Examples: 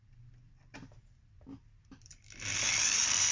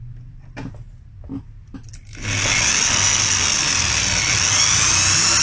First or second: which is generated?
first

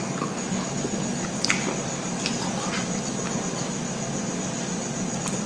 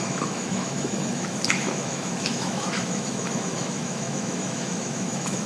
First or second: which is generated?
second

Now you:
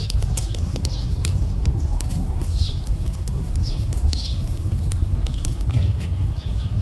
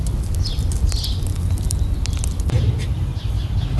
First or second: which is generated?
first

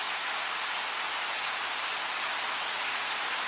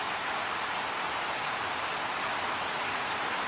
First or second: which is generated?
second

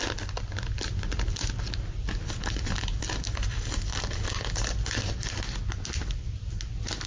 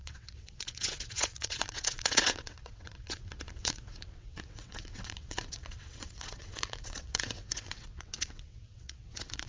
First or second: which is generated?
second